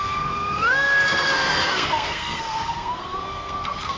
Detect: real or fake fake